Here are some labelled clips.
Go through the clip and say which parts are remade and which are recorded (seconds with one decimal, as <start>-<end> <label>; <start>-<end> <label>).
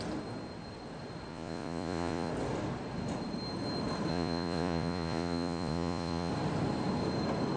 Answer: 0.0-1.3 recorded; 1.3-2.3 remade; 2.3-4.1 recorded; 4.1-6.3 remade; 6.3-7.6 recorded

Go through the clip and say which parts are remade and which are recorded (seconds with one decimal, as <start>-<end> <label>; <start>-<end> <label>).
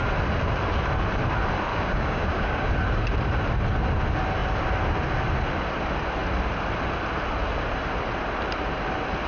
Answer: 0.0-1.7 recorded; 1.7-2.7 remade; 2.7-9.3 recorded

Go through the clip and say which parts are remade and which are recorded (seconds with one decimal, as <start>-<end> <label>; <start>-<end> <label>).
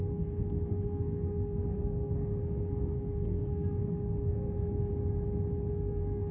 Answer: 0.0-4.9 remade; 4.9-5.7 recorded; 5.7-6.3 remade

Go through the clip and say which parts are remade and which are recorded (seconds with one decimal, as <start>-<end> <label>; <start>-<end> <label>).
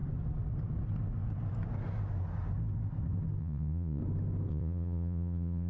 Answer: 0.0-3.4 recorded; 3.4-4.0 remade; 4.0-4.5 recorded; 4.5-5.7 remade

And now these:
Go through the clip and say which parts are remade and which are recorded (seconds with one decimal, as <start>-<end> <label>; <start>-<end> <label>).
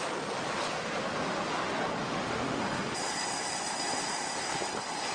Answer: 0.0-2.0 recorded; 2.0-2.6 remade; 2.6-5.1 recorded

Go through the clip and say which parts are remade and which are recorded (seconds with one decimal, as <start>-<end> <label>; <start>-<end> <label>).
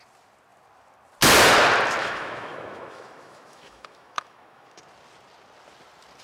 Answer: 0.0-2.0 recorded; 2.0-4.8 remade; 4.8-6.2 recorded